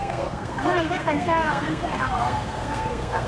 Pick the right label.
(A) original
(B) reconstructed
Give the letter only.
B